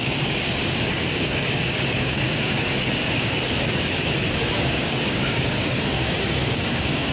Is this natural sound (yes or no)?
no